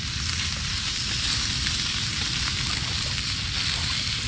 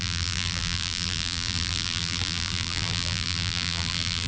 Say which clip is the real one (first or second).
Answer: first